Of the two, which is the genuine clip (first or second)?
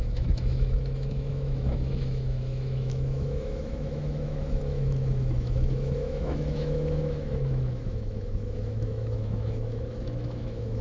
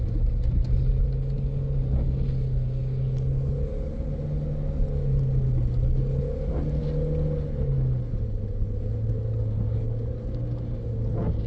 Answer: second